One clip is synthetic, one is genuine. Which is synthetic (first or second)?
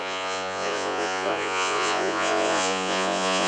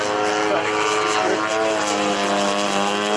first